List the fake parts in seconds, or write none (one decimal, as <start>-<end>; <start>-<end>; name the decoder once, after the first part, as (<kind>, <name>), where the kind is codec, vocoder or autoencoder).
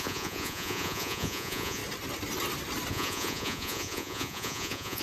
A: 0.0-1.8 (vocoder, Vocos); 2.9-5.0